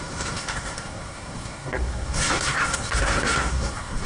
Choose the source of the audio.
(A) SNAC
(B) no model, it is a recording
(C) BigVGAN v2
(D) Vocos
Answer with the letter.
A